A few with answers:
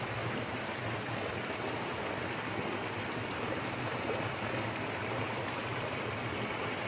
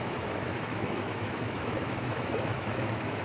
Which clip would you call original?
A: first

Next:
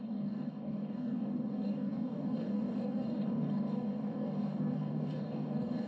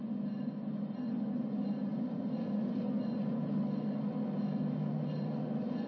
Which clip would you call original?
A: second